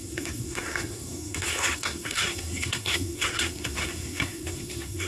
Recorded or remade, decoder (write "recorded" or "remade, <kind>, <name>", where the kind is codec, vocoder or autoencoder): remade, codec, SNAC